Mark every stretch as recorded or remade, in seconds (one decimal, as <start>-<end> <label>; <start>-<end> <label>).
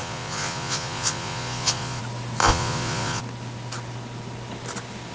0.0-2.0 remade; 2.0-2.4 recorded; 2.4-3.2 remade; 3.2-5.1 recorded